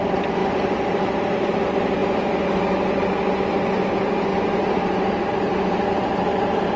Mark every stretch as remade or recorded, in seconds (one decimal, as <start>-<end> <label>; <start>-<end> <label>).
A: 0.0-0.4 recorded; 0.4-1.6 remade; 1.6-4.3 recorded; 4.3-5.3 remade; 5.3-6.8 recorded